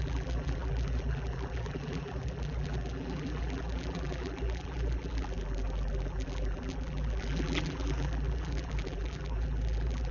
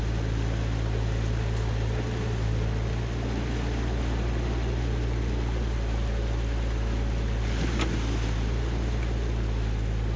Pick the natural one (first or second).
second